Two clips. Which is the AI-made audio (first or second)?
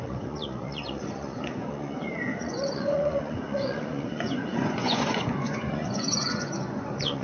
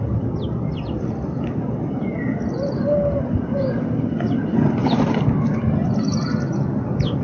first